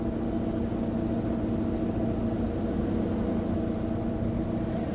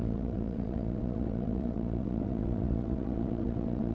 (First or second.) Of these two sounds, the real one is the first